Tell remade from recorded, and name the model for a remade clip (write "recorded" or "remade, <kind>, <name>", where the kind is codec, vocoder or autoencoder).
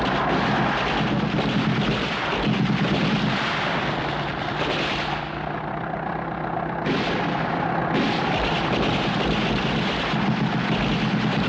recorded